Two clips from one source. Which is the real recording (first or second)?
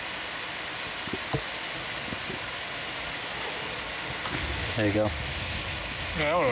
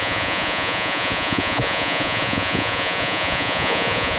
first